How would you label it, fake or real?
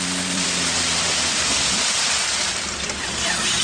fake